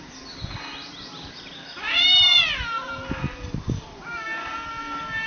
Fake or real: real